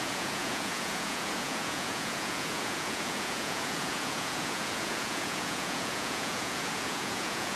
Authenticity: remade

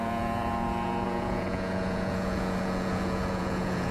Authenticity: remade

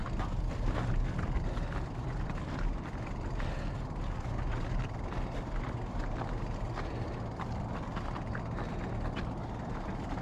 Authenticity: recorded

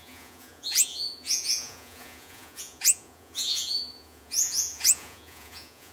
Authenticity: remade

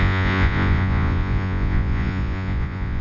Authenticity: remade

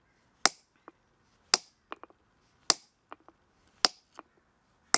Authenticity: recorded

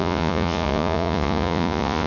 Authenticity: remade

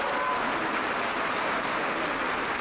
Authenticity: recorded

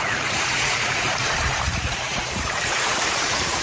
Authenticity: remade